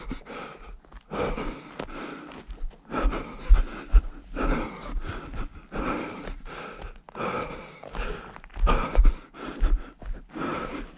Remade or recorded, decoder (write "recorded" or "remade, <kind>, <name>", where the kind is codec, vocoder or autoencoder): recorded